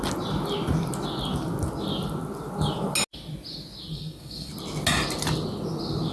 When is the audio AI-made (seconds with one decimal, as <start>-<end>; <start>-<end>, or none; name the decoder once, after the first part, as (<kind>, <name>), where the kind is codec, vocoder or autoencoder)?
3.9-4.5 (codec, SNAC)